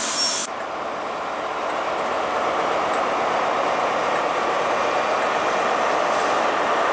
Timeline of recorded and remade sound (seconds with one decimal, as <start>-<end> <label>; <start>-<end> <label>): 0.0-6.9 recorded